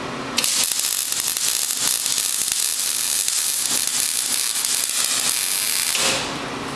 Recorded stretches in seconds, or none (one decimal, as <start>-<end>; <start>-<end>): 0.0-6.8

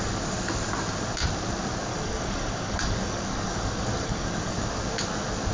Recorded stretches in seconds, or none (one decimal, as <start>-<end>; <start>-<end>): 0.0-1.9; 4.6-5.5

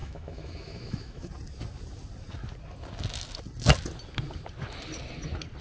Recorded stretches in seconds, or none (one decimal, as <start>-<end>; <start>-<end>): 1.3-5.6

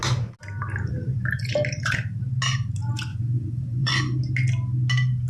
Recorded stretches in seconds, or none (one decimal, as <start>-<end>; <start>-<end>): 0.0-3.1; 3.9-5.3

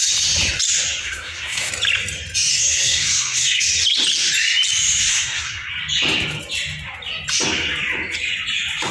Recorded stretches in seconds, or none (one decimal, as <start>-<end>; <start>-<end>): 0.0-1.0; 1.7-2.5; 3.6-5.1; 5.7-8.9